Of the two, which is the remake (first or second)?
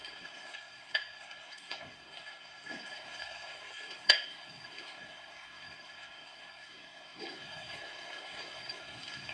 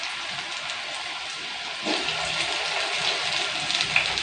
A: first